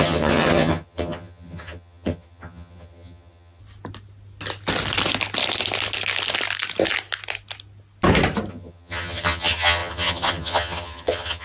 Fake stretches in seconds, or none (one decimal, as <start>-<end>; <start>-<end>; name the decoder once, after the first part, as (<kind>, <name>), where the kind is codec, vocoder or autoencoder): 0.0-3.6 (vocoder, HiFi-GAN); 8.5-11.4